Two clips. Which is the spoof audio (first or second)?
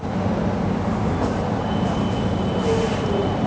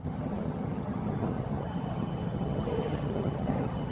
second